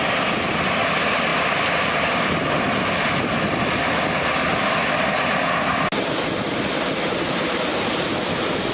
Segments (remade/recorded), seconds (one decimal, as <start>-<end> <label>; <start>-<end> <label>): 0.0-1.3 recorded; 1.3-2.9 remade; 2.9-7.7 recorded; 7.7-8.7 remade